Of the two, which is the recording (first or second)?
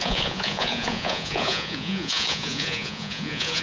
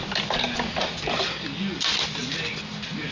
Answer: second